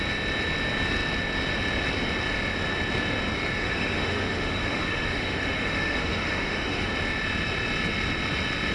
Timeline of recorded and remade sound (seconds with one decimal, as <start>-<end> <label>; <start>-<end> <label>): 0.0-3.6 recorded; 3.6-6.9 remade; 6.9-8.7 recorded